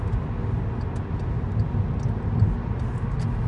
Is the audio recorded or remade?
recorded